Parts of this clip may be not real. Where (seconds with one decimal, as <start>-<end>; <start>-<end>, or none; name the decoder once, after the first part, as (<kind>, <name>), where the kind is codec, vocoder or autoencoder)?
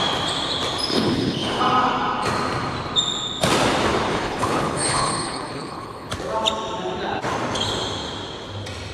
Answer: 0.9-1.6 (codec, HILCodec); 4.1-6.1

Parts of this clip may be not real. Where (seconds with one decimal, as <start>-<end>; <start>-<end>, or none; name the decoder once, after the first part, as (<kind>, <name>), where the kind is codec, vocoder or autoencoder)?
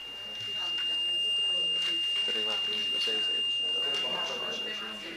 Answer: 4.1-4.6 (vocoder, BigVGAN v2)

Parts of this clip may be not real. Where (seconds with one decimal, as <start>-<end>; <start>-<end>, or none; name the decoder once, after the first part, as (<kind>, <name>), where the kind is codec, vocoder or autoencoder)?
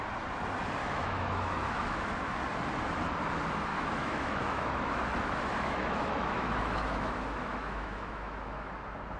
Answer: 0.8-2.3 (autoencoder, DAC-VAE); 3.7-8.7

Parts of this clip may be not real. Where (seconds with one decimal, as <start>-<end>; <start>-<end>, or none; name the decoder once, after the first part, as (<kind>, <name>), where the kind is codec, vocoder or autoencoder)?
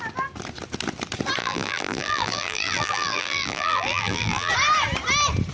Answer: 1.4-4.5 (vocoder, BigVGAN v2)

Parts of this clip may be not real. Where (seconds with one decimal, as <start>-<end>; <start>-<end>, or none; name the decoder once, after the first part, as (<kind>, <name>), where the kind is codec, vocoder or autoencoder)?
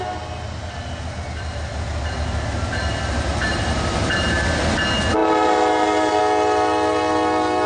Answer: 3.3-4.4 (vocoder, BigVGAN v2); 5.2-6.2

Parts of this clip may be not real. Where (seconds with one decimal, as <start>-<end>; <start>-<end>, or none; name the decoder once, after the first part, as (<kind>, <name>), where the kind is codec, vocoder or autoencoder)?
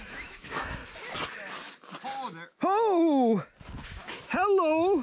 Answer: 0.0-0.8 (autoencoder, DAC-VAE); 3.8-5.0